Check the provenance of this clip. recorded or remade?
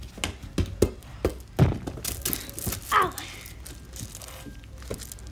recorded